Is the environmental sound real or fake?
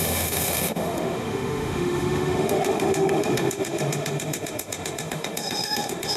fake